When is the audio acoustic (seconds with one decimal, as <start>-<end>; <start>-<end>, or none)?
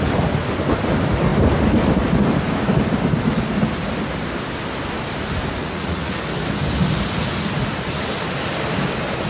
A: 0.0-5.6; 6.2-9.3